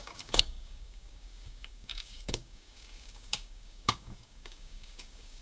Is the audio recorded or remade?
remade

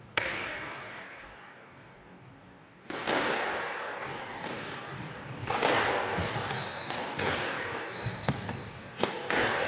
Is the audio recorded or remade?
remade